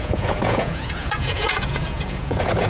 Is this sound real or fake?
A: fake